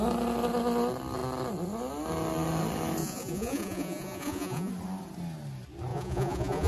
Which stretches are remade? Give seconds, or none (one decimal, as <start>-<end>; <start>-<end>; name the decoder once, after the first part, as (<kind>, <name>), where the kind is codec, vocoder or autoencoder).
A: 3.0-4.7 (vocoder, Vocos); 5.9-6.7